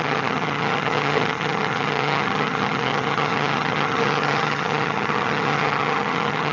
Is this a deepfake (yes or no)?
yes